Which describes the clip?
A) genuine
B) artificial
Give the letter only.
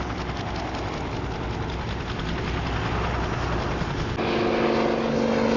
A